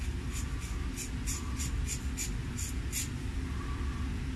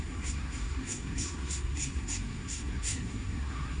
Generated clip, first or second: second